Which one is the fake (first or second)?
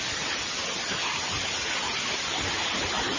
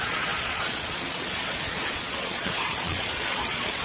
second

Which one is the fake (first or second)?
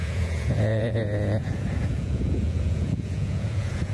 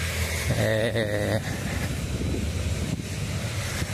first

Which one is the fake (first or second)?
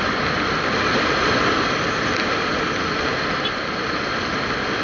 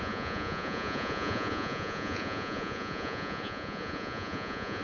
second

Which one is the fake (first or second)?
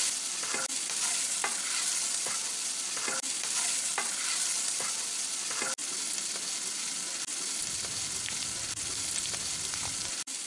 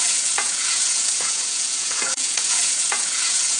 second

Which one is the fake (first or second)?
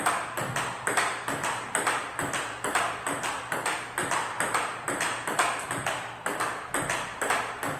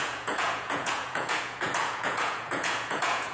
second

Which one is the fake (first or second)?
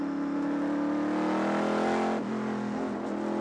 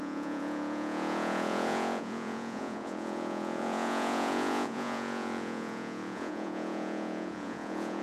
second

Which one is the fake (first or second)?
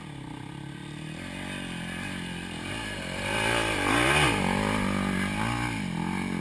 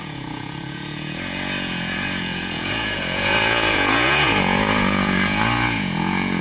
second